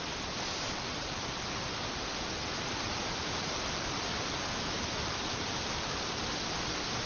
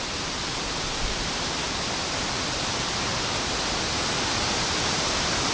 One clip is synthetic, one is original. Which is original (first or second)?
second